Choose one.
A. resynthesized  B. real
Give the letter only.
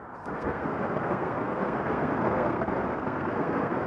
A